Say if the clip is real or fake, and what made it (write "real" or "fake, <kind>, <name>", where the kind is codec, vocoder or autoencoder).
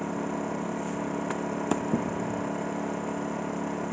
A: real